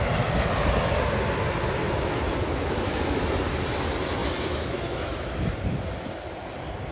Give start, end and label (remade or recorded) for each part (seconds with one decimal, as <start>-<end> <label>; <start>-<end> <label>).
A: 0.0-1.8 recorded; 1.8-3.2 remade; 3.2-4.2 recorded; 4.2-5.5 remade; 5.5-6.9 recorded